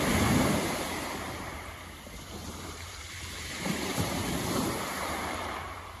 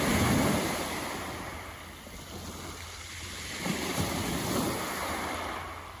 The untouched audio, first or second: second